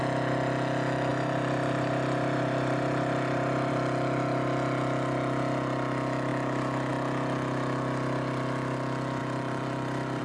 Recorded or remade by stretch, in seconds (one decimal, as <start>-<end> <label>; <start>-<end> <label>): 0.0-1.1 recorded; 1.1-3.7 remade; 3.7-6.3 recorded; 6.3-6.9 remade; 6.9-9.2 recorded; 9.2-10.2 remade